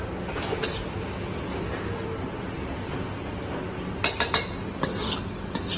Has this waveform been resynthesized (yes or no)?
no